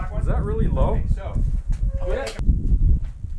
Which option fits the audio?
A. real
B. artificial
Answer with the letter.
A